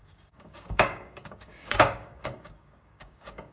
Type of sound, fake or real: fake